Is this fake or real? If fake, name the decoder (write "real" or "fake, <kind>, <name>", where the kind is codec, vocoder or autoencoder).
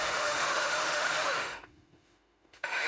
fake, autoencoder, DAC-VAE